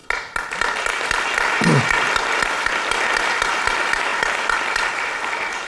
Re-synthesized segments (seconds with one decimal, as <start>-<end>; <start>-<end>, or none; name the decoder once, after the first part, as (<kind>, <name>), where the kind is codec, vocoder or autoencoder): none